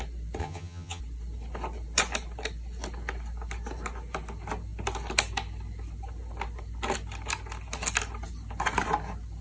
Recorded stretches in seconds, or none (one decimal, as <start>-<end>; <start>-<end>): 0.0-0.4; 1.0-9.4